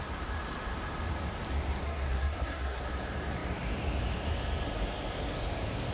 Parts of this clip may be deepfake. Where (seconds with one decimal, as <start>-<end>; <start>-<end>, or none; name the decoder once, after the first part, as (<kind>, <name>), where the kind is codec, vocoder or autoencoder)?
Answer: 1.8-2.8 (codec, SNAC)